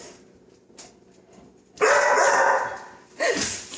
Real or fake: real